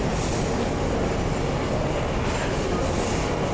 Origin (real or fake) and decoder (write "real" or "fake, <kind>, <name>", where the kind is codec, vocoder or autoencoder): real